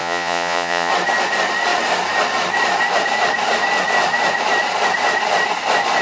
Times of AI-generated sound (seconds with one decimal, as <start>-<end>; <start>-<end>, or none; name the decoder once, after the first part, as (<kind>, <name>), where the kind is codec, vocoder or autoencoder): 0.0-0.9 (vocoder, Vocos)